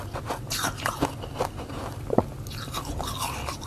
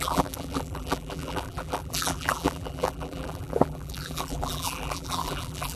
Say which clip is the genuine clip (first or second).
first